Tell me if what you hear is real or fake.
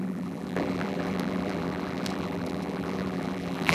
fake